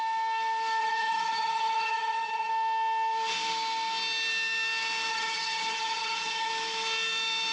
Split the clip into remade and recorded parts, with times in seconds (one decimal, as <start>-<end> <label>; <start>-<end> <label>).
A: 0.0-0.8 recorded; 0.8-2.5 remade; 2.5-5.1 recorded; 5.1-6.5 remade; 6.5-7.5 recorded